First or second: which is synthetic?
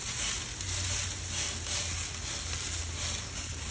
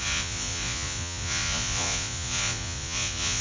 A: second